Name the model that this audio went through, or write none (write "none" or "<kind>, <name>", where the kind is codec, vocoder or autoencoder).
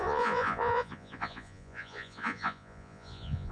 vocoder, Vocos